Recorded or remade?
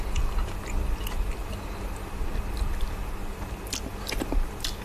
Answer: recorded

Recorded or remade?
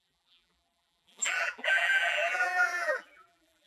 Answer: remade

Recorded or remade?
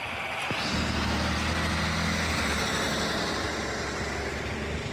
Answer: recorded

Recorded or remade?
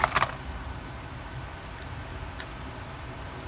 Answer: recorded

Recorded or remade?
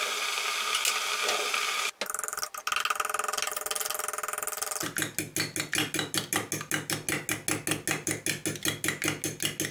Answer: recorded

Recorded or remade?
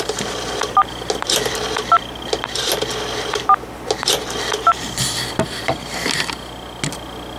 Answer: recorded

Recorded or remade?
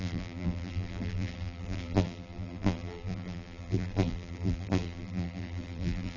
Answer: remade